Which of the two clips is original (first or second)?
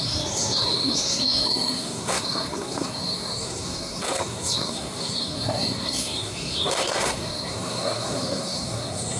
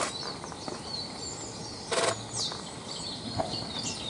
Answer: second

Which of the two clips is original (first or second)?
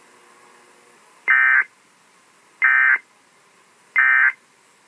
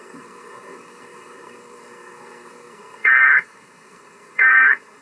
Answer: first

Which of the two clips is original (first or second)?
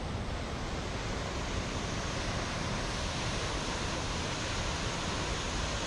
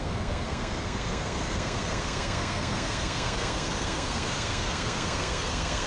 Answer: first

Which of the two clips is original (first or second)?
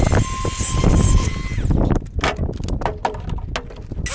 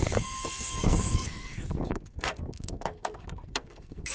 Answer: first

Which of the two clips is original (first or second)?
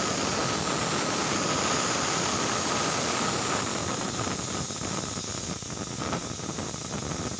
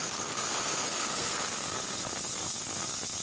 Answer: first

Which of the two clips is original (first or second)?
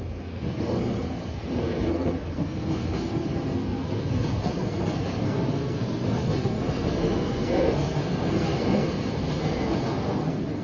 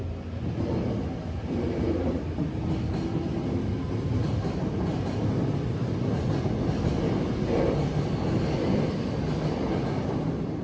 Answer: second